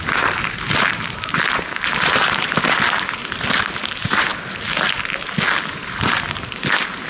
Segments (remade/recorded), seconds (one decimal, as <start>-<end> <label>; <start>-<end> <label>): 0.0-3.2 remade; 3.2-3.9 recorded; 3.9-4.3 remade; 4.3-5.7 recorded; 5.7-7.1 remade